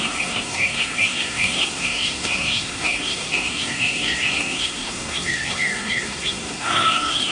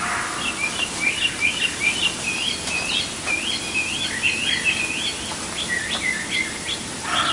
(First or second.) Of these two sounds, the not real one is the first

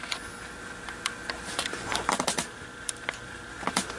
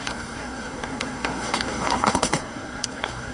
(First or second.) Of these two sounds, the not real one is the second